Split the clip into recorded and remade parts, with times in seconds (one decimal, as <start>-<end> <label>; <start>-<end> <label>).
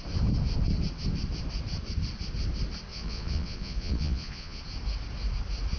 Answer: 0.0-2.9 recorded; 2.9-4.6 remade; 4.6-5.8 recorded